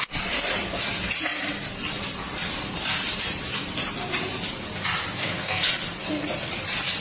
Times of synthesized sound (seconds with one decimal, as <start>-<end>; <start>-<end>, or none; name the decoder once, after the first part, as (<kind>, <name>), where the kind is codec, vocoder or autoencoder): 5.2-5.7 (codec, SNAC)